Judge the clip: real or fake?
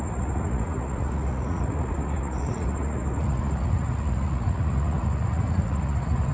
fake